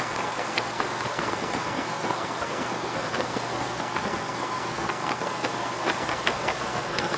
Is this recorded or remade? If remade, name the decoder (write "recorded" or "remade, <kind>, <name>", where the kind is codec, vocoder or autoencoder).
remade, codec, SNAC